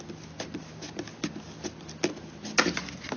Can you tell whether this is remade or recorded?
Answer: recorded